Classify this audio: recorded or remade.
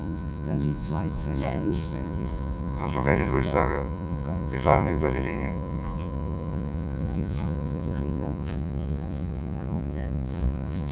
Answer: remade